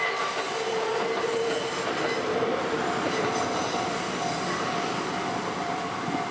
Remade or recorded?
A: recorded